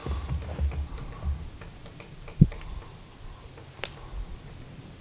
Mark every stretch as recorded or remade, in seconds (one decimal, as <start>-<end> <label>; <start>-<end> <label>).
0.0-5.0 recorded